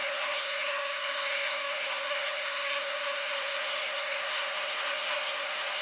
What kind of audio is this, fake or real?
fake